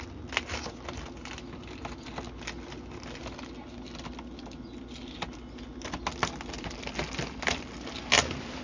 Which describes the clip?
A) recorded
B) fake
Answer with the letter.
A